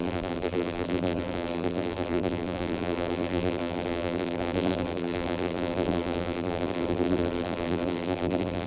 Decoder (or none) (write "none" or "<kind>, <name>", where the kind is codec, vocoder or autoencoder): vocoder, BigVGAN v2